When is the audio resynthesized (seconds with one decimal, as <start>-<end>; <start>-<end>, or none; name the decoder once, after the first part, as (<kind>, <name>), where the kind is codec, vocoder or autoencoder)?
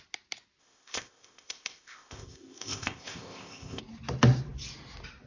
0.6-3.8 (codec, ZipCodec)